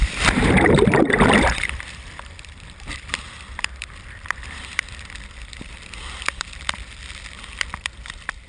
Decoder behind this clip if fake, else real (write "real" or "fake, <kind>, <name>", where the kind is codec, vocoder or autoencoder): fake, vocoder, BigVGAN v2